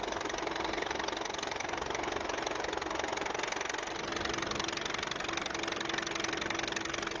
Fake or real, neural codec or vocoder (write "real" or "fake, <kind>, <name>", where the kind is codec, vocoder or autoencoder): real